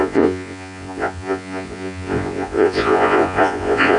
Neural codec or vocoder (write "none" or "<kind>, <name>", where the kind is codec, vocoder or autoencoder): vocoder, Vocos